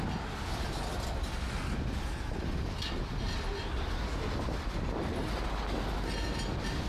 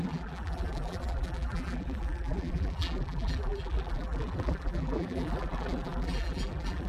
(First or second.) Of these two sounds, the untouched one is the first